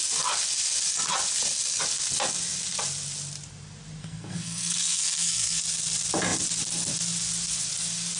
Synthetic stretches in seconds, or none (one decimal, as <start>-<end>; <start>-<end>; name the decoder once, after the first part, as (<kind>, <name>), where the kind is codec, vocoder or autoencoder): 4.0-5.6 (codec, SNAC)